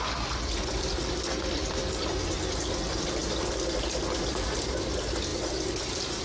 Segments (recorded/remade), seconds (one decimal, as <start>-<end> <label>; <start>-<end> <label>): 0.0-6.2 recorded